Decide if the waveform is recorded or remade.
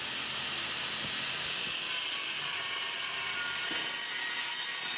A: recorded